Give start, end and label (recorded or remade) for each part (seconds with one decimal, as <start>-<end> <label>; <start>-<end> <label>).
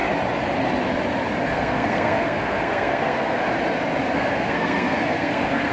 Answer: 0.0-1.5 recorded; 1.5-3.4 remade; 3.4-4.1 recorded; 4.1-5.7 remade